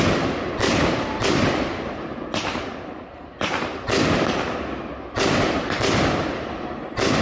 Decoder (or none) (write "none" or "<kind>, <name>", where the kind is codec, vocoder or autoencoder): none